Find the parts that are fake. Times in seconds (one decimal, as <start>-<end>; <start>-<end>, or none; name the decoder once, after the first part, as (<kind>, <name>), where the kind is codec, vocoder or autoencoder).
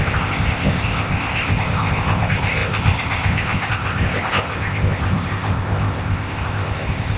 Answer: 0.0-7.2 (codec, ZipCodec)